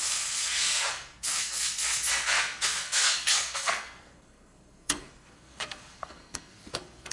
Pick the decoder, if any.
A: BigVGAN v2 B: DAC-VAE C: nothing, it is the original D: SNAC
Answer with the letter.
D